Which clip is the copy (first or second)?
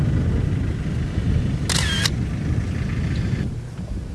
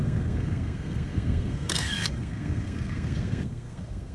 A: second